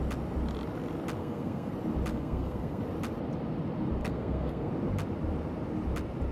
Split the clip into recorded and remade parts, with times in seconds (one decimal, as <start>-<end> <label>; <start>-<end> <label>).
0.0-1.2 recorded; 1.2-1.7 remade; 1.7-2.1 recorded; 2.1-2.8 remade; 2.8-4.0 recorded; 4.0-4.7 remade; 4.7-6.3 recorded